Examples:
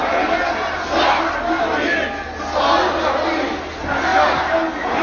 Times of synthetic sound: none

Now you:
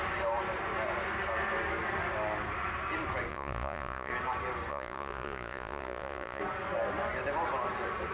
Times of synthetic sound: 3.3-4.1; 4.7-6.4